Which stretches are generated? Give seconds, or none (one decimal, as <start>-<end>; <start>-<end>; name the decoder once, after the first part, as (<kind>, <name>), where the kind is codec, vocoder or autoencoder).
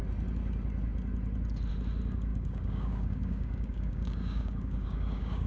2.3-5.5 (codec, DAC)